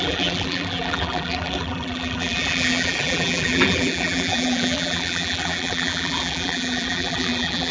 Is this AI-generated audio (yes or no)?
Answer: yes